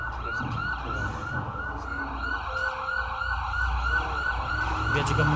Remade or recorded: recorded